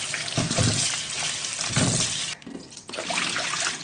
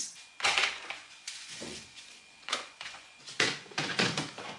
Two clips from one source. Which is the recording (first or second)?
first